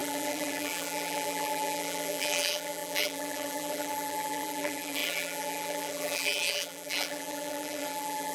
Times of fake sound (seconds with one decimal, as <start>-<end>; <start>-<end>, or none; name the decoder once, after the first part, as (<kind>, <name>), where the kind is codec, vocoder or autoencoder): 0.0-8.3 (vocoder, BigVGAN v2)